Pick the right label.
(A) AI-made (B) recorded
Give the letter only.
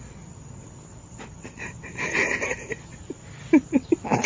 B